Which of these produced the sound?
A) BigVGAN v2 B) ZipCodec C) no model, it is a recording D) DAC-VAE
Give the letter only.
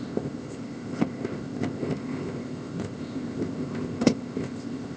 B